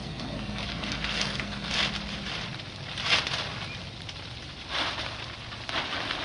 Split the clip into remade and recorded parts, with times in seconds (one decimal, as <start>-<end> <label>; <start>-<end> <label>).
0.0-1.7 remade; 1.7-6.2 recorded

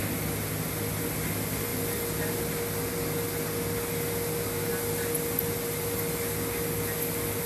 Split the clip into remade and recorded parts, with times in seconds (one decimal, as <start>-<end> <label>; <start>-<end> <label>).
0.0-7.5 recorded

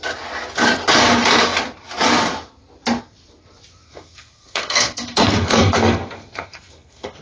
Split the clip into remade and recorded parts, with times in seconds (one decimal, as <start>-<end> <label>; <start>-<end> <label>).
0.0-3.8 recorded; 3.8-7.2 remade

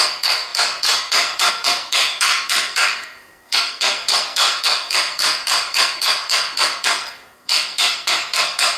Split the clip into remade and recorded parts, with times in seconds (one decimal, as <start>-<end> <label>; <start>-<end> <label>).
0.0-8.8 remade

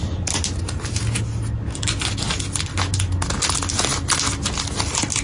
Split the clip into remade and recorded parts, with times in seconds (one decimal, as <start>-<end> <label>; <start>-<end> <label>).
0.0-5.2 recorded

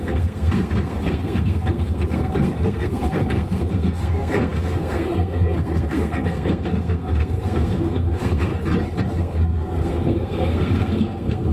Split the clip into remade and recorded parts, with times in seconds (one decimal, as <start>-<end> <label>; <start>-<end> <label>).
0.0-8.5 remade; 8.5-9.2 recorded; 9.2-11.5 remade

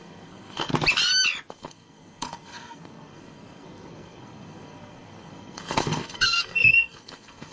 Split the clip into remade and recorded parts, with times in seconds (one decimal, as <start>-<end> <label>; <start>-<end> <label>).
0.0-0.7 remade; 0.7-1.5 recorded; 1.5-7.5 remade